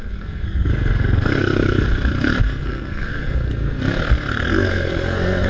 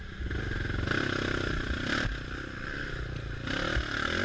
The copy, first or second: first